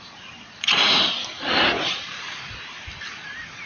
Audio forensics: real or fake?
fake